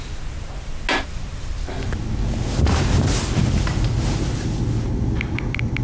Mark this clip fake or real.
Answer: real